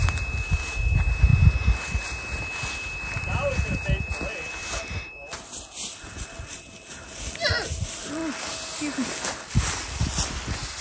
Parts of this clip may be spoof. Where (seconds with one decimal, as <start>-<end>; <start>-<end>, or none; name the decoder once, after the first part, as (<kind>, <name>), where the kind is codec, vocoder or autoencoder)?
none